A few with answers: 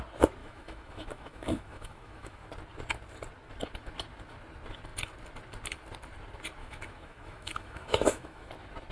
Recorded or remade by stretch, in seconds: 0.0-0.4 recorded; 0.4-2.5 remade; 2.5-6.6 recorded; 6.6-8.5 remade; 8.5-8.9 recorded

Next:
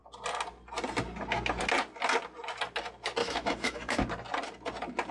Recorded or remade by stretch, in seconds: 0.0-3.2 recorded; 3.2-4.0 remade; 4.0-5.1 recorded